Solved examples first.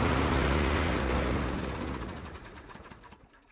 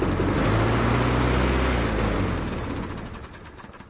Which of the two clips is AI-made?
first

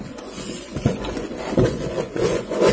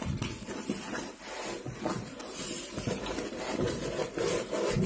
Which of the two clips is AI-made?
first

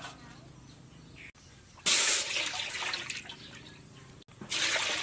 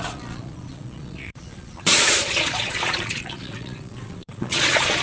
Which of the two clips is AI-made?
second